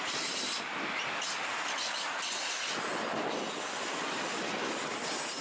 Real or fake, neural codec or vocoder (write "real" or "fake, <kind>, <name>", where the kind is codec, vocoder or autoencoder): real